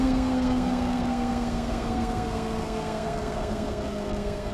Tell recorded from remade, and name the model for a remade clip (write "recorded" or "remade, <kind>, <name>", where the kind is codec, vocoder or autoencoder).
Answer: remade, codec, SNAC